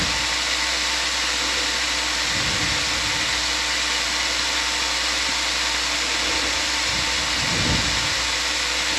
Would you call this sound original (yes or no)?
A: yes